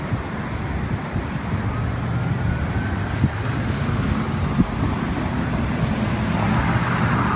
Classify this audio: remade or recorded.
recorded